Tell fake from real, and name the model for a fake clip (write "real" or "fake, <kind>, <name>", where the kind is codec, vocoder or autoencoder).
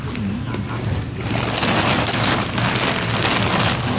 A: real